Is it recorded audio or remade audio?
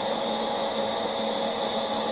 recorded